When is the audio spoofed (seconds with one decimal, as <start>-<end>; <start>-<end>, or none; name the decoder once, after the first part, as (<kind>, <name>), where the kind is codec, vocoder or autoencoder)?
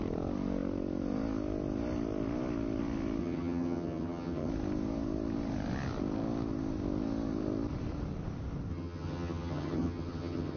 3.2-4.5 (vocoder, HiFi-GAN); 8.7-10.6